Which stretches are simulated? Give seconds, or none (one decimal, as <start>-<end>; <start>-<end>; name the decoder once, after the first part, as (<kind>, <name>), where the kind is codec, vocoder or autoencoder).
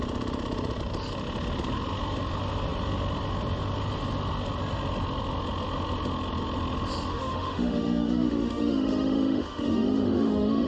7.1-10.7 (autoencoder, DAC-VAE)